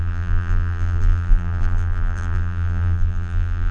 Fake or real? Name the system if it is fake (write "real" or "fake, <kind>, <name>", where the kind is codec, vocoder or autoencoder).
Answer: fake, vocoder, BigVGAN v2